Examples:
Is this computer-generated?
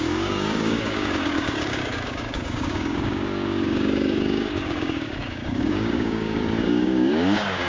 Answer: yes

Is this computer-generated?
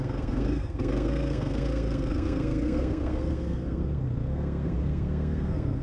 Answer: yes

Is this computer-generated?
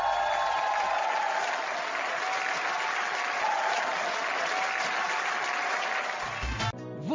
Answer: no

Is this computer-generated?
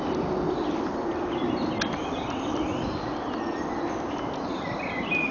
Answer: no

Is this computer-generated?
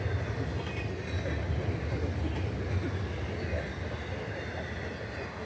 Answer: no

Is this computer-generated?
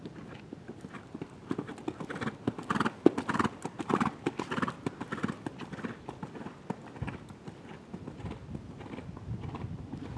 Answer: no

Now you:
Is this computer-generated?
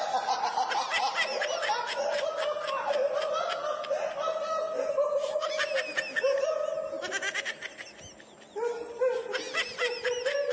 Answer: no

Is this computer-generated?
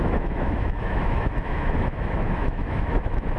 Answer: yes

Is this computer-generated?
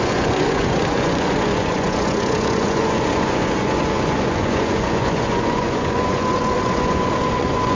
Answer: yes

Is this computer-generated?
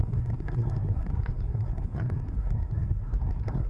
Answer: yes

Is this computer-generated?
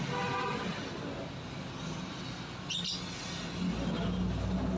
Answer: no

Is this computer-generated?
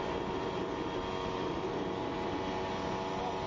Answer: no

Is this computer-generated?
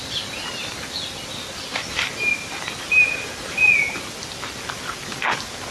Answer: no